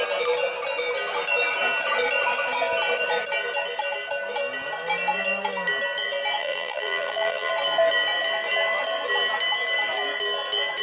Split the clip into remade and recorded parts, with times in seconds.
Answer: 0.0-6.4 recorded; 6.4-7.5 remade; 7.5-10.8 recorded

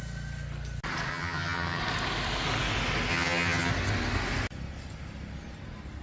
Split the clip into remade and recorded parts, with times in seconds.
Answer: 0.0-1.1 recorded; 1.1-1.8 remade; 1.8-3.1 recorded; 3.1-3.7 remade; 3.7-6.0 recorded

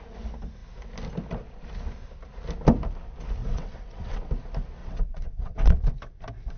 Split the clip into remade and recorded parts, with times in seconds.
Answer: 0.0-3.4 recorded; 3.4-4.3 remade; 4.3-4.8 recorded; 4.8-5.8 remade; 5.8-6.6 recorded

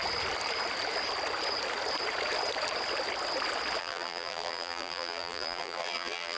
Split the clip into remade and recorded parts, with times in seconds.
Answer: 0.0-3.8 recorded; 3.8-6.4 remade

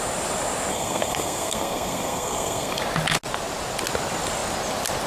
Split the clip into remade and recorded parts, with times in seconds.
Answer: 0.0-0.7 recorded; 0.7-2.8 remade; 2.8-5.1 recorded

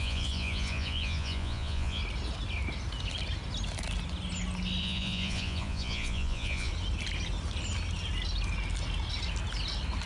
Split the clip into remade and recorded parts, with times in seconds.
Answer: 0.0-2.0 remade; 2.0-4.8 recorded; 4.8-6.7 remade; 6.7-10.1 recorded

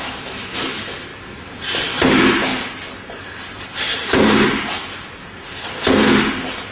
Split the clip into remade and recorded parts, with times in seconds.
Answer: 0.0-1.1 remade; 1.1-2.1 recorded; 2.1-2.5 remade; 2.5-6.7 recorded

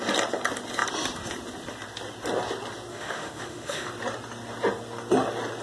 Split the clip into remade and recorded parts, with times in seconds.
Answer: 0.0-2.9 recorded; 2.9-3.9 remade; 3.9-5.6 recorded